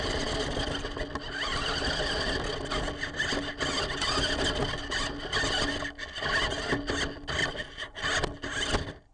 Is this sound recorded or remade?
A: recorded